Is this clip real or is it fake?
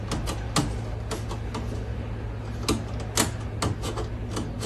real